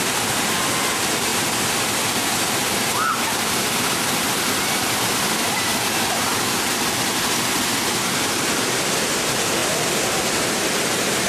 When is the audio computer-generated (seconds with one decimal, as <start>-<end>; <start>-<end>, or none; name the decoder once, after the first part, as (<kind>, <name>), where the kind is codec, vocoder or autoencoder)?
1.3-5.0 (vocoder, BigVGAN v2); 6.3-8.9